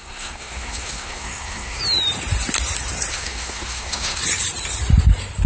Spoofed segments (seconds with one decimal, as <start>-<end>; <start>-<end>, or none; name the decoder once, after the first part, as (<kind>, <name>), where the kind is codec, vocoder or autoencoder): 0.0-1.8 (codec, SNAC); 3.1-4.2